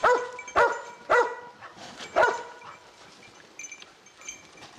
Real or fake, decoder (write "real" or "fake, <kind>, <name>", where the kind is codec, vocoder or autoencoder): real